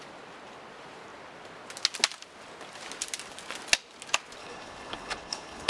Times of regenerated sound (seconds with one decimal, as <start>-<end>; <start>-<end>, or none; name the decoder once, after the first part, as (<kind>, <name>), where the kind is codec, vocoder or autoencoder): 4.4-5.7 (codec, HILCodec)